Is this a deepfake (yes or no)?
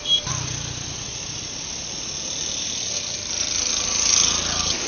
no